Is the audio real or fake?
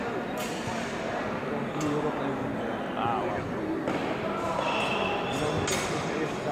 real